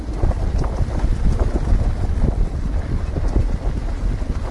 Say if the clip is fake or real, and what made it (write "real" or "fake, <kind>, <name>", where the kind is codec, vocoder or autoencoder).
real